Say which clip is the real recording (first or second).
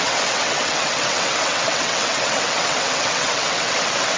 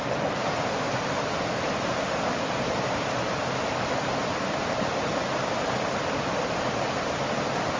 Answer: second